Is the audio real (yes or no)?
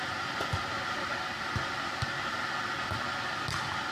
yes